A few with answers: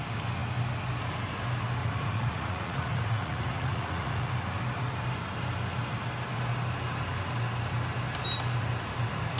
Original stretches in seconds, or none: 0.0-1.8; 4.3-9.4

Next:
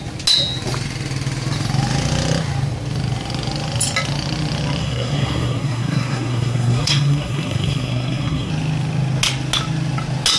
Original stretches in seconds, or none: 0.0-4.8; 8.5-10.4

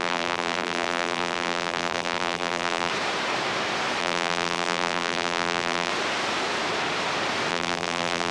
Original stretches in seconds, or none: 2.9-4.0; 5.9-7.5

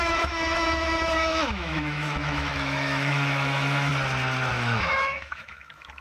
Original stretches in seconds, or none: 3.9-4.5

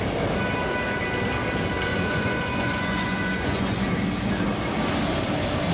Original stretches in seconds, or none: 0.0-1.9; 3.9-5.7

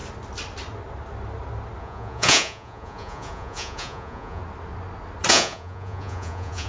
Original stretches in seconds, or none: 0.0-1.8; 4.4-5.3

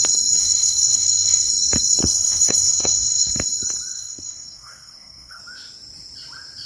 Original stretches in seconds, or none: 0.0-0.4; 1.5-2.0; 3.3-3.9; 5.4-6.7

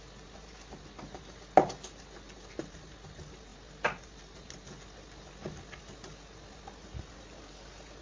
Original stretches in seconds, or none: 0.0-8.0